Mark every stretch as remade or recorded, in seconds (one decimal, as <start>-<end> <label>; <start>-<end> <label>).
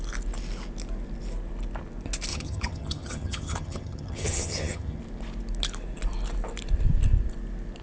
0.0-2.3 recorded; 2.3-5.0 remade; 5.0-7.8 recorded